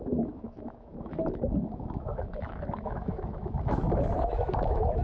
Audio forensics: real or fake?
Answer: fake